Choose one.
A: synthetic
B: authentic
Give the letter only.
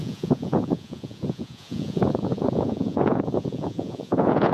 A